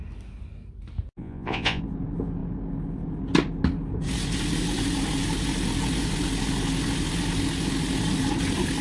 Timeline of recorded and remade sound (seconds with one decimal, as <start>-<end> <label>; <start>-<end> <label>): 0.0-1.2 recorded; 1.2-1.8 remade; 1.8-8.8 recorded